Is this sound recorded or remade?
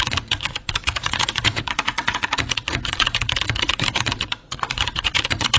remade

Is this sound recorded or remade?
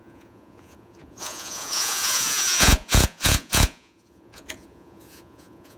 remade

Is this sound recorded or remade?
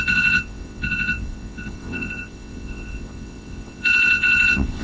remade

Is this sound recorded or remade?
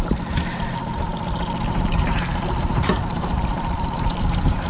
recorded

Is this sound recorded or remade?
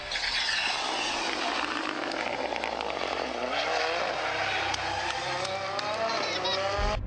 recorded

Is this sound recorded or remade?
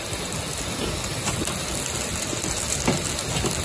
recorded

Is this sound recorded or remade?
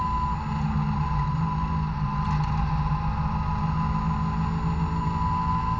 recorded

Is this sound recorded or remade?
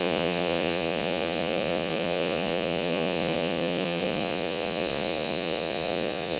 remade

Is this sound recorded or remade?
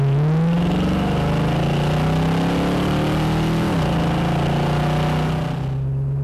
recorded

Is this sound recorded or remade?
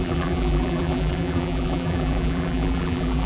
remade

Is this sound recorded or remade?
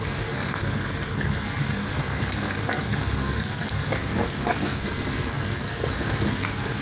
remade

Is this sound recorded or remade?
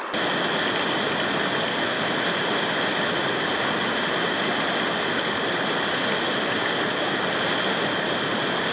recorded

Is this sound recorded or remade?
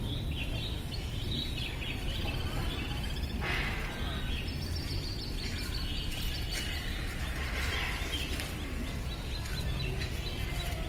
recorded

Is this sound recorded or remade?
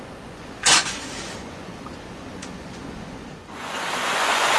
remade